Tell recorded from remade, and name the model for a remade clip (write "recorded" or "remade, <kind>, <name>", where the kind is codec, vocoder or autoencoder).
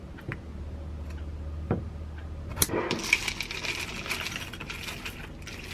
recorded